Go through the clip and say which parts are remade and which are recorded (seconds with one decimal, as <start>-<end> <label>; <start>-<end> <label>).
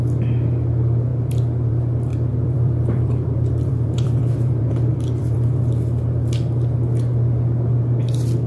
0.0-2.1 recorded; 2.1-5.6 remade; 5.6-8.5 recorded